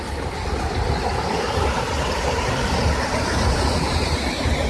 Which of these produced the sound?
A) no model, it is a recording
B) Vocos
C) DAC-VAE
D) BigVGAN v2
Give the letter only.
A